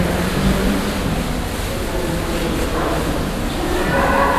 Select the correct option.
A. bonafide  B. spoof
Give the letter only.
A